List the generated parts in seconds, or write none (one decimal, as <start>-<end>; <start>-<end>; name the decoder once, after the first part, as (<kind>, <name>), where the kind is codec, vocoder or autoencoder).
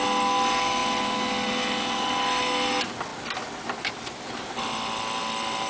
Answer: none